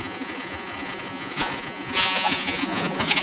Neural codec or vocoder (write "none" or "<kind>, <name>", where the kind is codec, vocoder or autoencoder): vocoder, Vocos